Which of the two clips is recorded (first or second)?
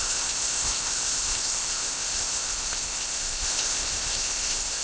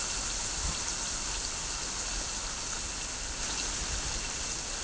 second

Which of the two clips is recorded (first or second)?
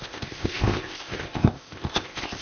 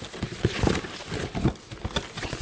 second